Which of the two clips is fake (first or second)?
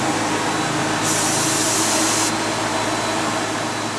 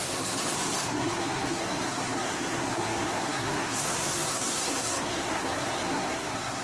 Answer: second